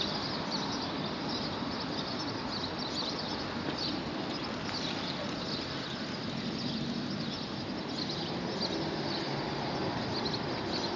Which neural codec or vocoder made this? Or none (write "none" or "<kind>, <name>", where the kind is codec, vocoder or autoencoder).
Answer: none